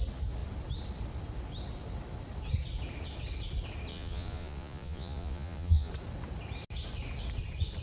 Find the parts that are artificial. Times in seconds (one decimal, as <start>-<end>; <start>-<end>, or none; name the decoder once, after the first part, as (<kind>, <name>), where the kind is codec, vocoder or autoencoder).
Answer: 3.9-5.9 (vocoder, Vocos)